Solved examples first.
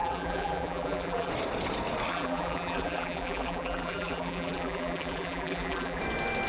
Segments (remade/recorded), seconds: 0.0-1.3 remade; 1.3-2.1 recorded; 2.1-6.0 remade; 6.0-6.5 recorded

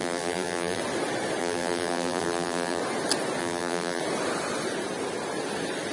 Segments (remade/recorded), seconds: 0.0-0.8 remade; 0.8-1.4 recorded; 1.4-2.8 remade; 2.8-3.4 recorded; 3.4-4.0 remade; 4.0-5.9 recorded

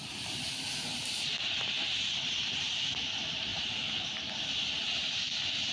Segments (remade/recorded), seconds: 0.0-0.9 recorded; 0.9-2.0 remade; 2.0-5.7 recorded

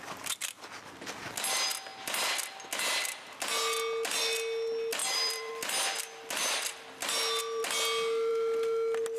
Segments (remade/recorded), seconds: 0.0-5.0 recorded; 5.0-5.5 remade; 5.5-9.2 recorded

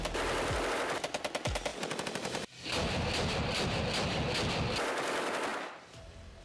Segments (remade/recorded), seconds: 0.0-1.7 recorded; 1.7-3.8 remade; 3.8-5.5 recorded; 5.5-6.4 remade

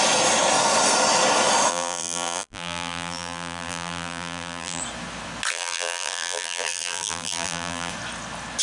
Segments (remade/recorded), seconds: 0.0-1.7 recorded; 1.7-4.8 remade; 4.8-5.5 recorded; 5.5-7.9 remade; 7.9-8.6 recorded

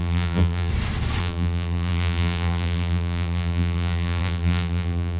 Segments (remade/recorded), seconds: 0.0-0.7 remade; 0.7-1.2 recorded; 1.2-5.2 remade